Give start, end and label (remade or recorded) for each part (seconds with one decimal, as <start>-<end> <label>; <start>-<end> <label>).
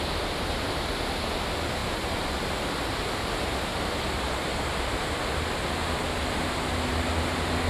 0.0-1.8 recorded; 1.8-3.1 remade; 3.1-3.7 recorded; 3.7-5.1 remade; 5.1-7.7 recorded